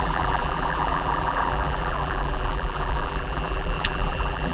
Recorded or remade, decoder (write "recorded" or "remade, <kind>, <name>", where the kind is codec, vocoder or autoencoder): remade, vocoder, BigVGAN v2